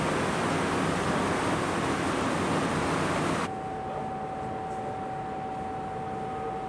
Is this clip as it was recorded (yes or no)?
yes